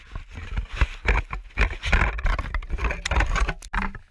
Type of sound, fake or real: real